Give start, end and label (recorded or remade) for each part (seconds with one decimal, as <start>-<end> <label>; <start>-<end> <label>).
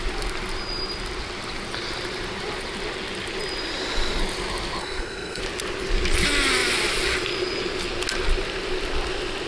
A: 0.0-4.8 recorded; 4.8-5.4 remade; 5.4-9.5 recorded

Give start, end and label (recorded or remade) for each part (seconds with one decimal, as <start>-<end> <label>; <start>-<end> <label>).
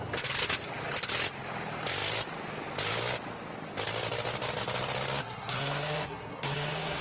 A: 0.0-5.2 recorded; 5.2-7.0 remade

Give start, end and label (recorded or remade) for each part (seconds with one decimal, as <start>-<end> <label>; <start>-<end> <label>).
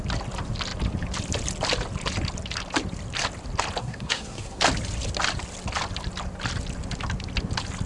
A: 0.0-3.8 recorded; 3.8-4.6 remade; 4.6-7.9 recorded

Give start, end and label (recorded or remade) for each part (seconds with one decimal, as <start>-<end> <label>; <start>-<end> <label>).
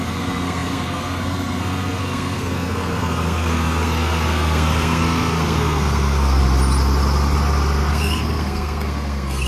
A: 0.0-6.4 remade; 6.4-7.9 recorded; 7.9-9.5 remade